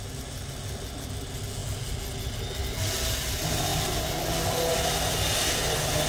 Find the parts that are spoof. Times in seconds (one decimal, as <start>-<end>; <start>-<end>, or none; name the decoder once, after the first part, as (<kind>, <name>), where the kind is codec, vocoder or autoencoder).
none